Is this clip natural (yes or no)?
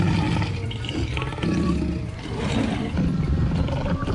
no